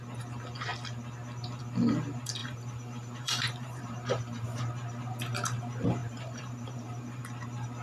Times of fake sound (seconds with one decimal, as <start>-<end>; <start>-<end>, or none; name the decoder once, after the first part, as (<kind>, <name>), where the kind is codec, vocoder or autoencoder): 2.4-4.6 (vocoder, BigVGAN v2); 6.0-7.2